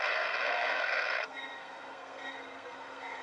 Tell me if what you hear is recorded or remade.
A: remade